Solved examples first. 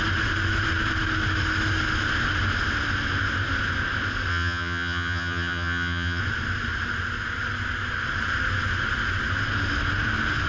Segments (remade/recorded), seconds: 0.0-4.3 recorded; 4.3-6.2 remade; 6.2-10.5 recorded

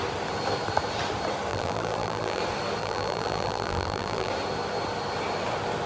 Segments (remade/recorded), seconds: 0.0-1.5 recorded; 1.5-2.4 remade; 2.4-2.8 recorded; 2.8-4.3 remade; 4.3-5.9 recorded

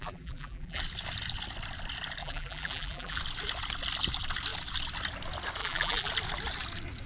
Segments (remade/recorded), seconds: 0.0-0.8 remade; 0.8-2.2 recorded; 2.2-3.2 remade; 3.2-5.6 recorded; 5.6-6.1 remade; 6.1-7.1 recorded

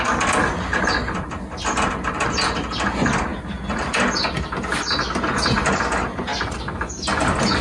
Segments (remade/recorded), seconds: 0.0-7.6 recorded